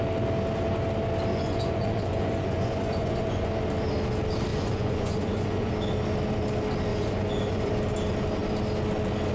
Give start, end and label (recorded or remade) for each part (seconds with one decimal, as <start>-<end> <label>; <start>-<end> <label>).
0.0-1.3 recorded; 1.3-3.5 remade; 3.5-4.5 recorded; 4.5-5.7 remade; 5.7-6.9 recorded; 6.9-7.7 remade; 7.7-9.3 recorded